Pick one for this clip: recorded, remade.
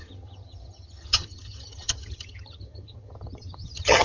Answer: remade